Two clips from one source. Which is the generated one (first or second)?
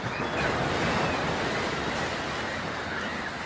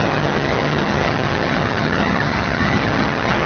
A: second